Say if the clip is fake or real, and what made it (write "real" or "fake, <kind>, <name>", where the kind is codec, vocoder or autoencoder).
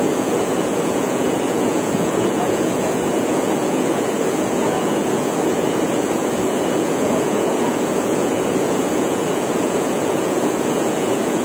fake, vocoder, Vocos